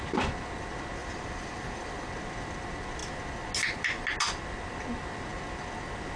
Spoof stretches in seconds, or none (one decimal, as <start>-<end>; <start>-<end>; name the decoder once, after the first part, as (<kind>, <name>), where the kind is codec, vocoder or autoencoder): 1.0-2.1 (vocoder, BigVGAN v2)